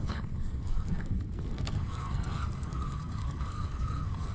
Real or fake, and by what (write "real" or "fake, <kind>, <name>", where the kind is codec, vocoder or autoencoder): fake, codec, SNAC